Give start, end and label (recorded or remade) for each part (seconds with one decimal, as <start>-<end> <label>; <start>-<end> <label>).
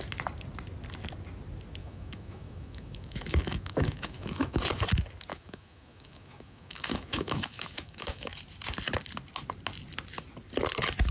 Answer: 0.0-1.8 recorded; 1.8-4.6 remade; 4.6-5.3 recorded; 5.3-8.3 remade; 8.3-11.1 recorded